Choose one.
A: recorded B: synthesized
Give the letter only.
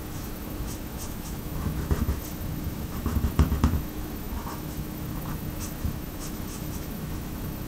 B